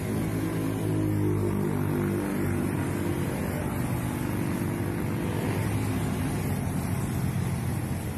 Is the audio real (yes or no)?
yes